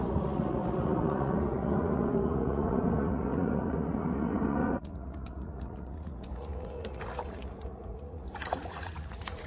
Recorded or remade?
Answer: remade